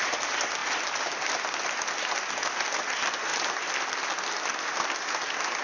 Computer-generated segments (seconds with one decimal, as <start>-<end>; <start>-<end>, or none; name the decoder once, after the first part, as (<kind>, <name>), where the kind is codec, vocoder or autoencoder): 3.3-4.1 (vocoder, BigVGAN v2)